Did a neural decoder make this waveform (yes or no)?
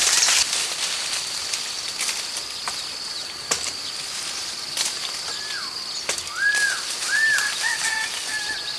no